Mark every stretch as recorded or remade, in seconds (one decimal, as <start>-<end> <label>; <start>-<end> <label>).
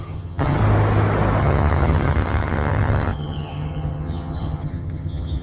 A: 0.0-0.6 remade; 0.6-1.4 recorded; 1.4-5.4 remade